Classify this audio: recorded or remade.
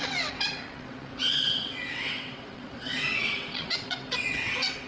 remade